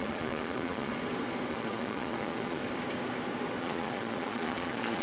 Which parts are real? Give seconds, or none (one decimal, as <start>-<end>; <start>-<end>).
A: 0.9-1.5; 2.6-3.6